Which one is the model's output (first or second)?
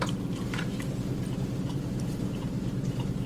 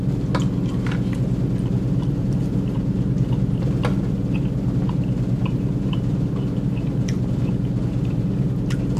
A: first